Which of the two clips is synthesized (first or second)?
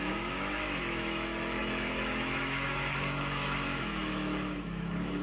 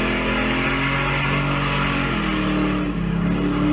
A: first